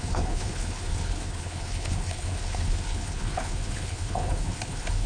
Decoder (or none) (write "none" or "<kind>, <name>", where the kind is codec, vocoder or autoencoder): codec, HILCodec